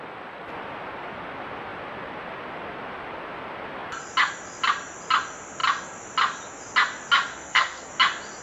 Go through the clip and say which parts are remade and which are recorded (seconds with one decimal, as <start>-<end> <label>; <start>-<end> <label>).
0.0-7.3 recorded; 7.3-7.9 remade; 7.9-8.4 recorded